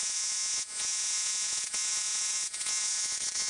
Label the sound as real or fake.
fake